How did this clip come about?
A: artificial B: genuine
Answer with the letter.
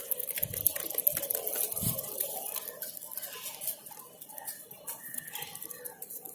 B